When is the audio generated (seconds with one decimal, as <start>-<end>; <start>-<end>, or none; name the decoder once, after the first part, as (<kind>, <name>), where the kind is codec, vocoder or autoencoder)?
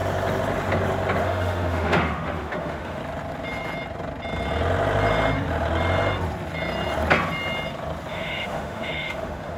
1.2-3.0 (autoencoder, DAC-VAE); 8.1-9.6